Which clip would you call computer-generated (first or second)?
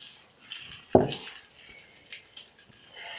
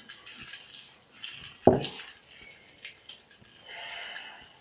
first